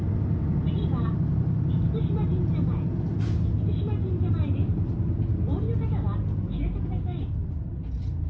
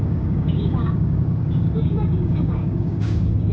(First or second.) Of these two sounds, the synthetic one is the second